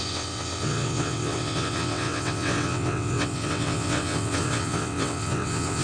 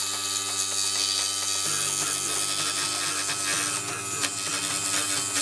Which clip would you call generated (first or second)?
first